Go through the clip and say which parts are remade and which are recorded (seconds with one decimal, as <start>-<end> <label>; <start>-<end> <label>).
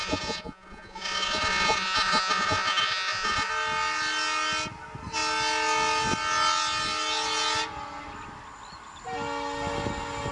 0.0-3.5 remade; 3.5-10.3 recorded